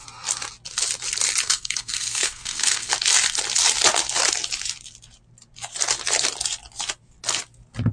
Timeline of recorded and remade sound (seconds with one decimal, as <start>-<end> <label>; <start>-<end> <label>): 0.0-1.4 recorded; 1.4-2.9 remade; 2.9-7.9 recorded